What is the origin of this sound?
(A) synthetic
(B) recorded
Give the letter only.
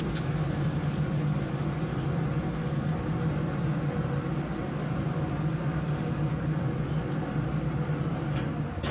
B